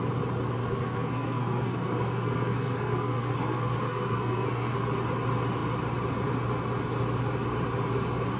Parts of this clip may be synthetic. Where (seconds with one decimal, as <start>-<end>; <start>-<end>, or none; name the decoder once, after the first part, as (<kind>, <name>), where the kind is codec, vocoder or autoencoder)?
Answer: 0.6-4.7 (codec, SNAC)